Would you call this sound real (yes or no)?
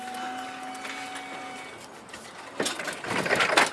yes